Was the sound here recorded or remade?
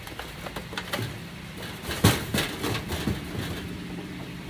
remade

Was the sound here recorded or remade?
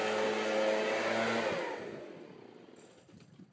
recorded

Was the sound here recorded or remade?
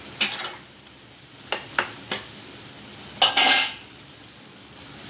recorded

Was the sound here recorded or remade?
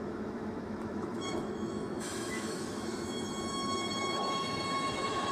remade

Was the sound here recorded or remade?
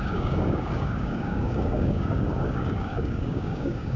remade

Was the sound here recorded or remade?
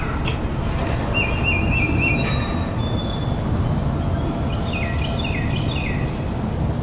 recorded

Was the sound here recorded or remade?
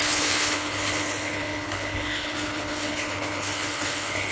remade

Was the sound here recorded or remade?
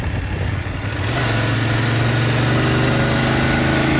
recorded